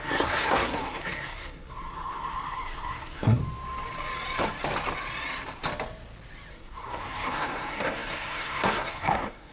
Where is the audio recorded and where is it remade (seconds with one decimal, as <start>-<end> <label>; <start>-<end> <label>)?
0.0-3.4 remade; 3.4-6.5 recorded; 6.5-9.5 remade